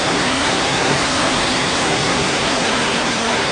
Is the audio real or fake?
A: fake